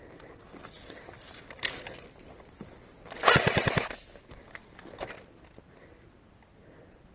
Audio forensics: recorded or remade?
recorded